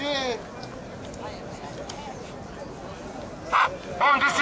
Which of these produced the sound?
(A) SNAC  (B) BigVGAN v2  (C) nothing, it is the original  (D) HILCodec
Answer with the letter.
C